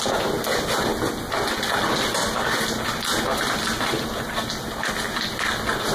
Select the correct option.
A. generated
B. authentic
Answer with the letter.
B